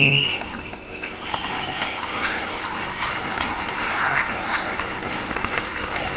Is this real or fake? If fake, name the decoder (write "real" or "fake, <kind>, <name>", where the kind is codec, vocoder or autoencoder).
fake, codec, SNAC